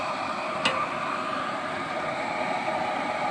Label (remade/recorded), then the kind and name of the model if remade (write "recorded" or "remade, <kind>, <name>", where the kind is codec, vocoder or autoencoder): recorded